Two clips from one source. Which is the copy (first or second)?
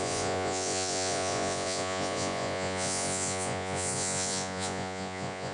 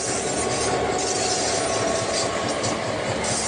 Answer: first